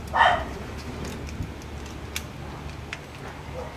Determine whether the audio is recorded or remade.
recorded